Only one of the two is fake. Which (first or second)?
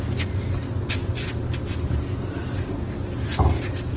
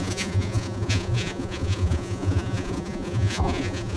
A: second